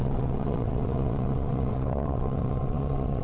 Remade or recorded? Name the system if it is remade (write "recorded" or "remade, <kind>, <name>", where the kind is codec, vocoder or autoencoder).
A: remade, vocoder, WaveNeXt